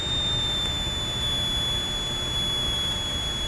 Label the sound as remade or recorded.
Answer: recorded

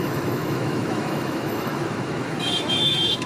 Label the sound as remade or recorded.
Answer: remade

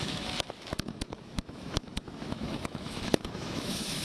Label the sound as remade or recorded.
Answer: remade